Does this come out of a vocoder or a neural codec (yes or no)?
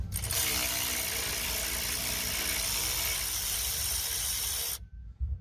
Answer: no